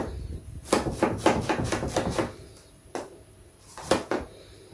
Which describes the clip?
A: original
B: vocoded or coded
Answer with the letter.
A